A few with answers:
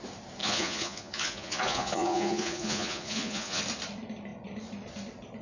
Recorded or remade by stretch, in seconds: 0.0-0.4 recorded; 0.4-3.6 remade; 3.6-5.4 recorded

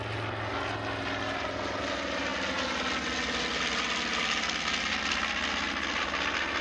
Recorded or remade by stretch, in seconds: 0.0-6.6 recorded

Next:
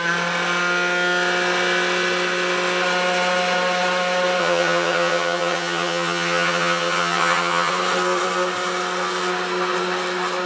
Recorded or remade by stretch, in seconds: 0.0-4.4 recorded; 4.4-7.7 remade; 7.7-10.5 recorded

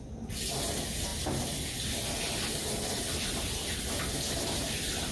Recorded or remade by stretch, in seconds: 0.0-1.1 recorded; 1.1-3.8 remade; 3.8-5.1 recorded

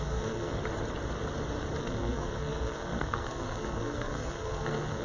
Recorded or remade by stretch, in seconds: 0.0-0.6 remade; 0.6-1.8 recorded; 1.8-5.0 remade

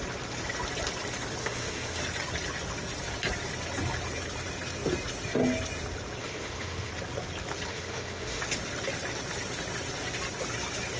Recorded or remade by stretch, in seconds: 0.0-1.4 recorded; 1.4-2.0 remade; 2.0-6.2 recorded; 6.2-6.9 remade; 6.9-7.7 recorded; 7.7-8.4 remade; 8.4-11.0 recorded

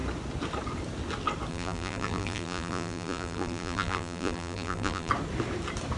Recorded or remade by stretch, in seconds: 0.0-1.5 recorded; 1.5-5.1 remade; 5.1-6.0 recorded